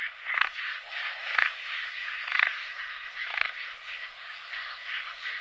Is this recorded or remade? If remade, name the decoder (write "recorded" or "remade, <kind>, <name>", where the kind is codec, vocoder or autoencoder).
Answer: remade, codec, SNAC